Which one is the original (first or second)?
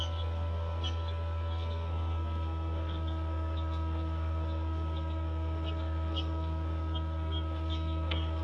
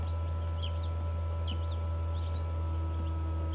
second